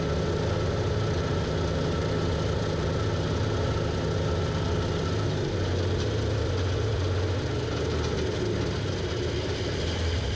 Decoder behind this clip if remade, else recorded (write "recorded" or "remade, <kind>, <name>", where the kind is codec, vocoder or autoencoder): recorded